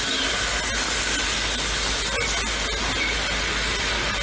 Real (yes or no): yes